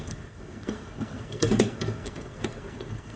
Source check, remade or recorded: remade